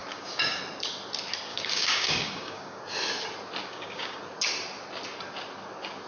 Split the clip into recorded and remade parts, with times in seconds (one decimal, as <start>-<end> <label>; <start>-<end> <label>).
0.0-0.6 remade; 0.6-1.5 recorded; 1.5-2.8 remade; 2.8-3.6 recorded; 3.6-4.2 remade; 4.2-6.1 recorded